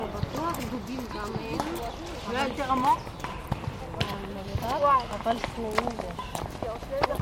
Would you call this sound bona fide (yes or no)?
yes